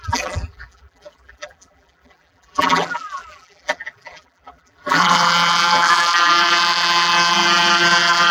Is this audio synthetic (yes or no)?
yes